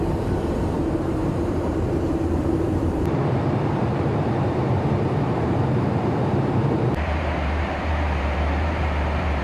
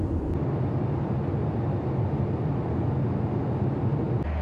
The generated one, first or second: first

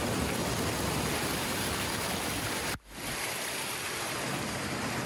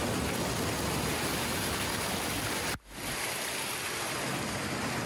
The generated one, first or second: first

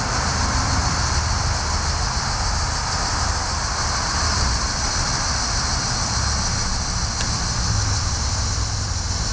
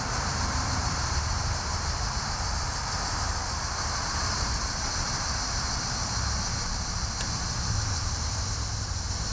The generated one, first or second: second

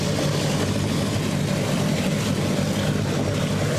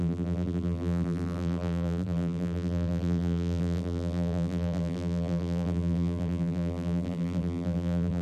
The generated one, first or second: second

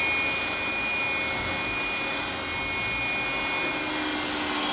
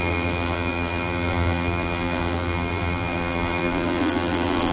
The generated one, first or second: second